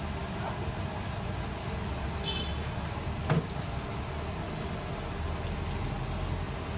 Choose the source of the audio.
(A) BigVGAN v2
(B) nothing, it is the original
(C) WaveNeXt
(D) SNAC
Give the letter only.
B